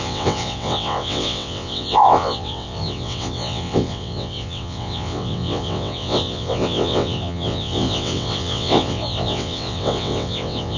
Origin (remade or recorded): remade